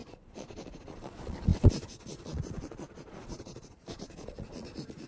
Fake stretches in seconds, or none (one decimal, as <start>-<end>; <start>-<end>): 0.0-5.1

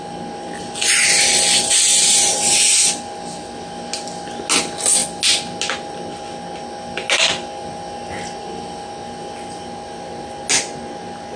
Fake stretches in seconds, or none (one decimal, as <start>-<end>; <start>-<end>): 1.9-2.8

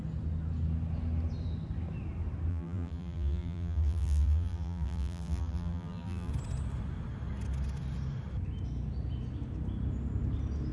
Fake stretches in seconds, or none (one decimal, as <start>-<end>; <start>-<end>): 2.5-6.3

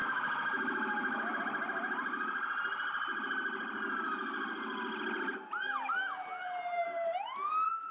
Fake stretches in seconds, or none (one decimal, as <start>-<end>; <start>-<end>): 0.0-1.4

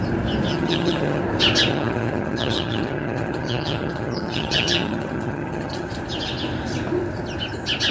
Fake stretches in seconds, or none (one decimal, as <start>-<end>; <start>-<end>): 0.5-1.2; 1.7-5.9

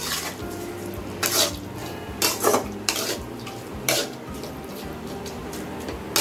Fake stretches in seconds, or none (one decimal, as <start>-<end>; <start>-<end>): 1.8-5.4

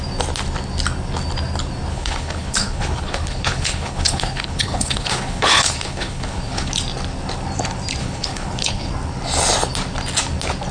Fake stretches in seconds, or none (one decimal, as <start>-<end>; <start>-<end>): 1.9-6.7; 8.0-8.9

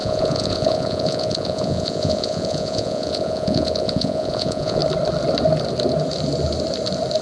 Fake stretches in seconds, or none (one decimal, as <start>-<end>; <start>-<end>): 0.0-4.8